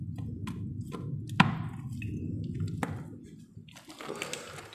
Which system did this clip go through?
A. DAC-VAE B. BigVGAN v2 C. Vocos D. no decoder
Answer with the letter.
D